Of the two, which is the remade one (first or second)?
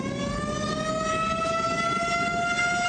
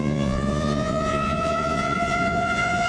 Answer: second